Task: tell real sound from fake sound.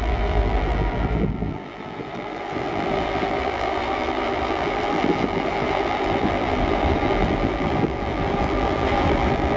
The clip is fake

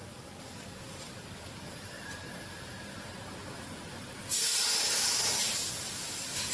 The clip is real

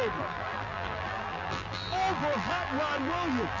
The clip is fake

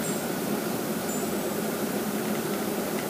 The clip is real